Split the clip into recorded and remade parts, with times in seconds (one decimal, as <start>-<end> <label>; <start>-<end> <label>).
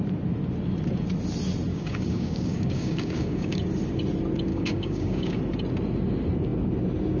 0.0-1.7 recorded; 1.7-3.6 remade; 3.6-4.5 recorded; 4.5-5.4 remade; 5.4-7.2 recorded